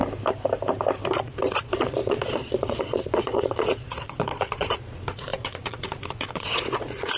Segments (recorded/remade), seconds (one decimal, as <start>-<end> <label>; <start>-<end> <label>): 0.0-1.1 recorded; 1.1-7.2 remade